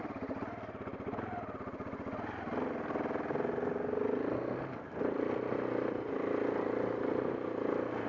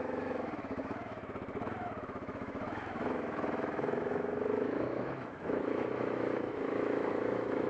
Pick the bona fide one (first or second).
first